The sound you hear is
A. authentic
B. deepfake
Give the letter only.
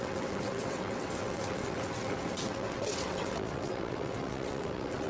B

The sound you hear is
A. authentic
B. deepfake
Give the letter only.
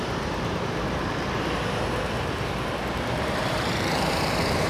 B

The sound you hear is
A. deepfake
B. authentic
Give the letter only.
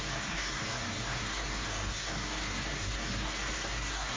A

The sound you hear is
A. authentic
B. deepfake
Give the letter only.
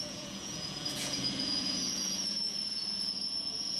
B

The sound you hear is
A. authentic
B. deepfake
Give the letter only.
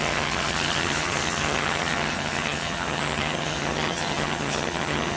B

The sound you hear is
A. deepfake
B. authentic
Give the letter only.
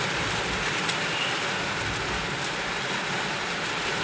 B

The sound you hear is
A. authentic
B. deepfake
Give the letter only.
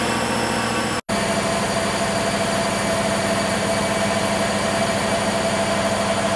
A